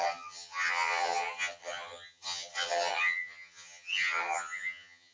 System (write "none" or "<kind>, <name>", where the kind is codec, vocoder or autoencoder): vocoder, HiFi-GAN